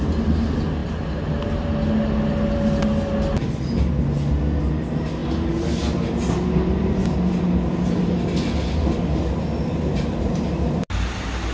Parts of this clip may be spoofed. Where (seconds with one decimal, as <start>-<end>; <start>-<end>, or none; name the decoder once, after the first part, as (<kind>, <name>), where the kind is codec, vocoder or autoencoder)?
none